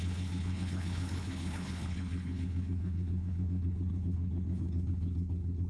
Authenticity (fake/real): fake